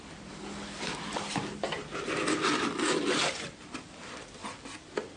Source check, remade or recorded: remade